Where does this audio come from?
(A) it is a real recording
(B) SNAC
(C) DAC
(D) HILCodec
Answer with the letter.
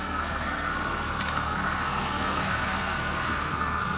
B